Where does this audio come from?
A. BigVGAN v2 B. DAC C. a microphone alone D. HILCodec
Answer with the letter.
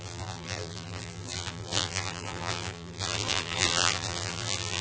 A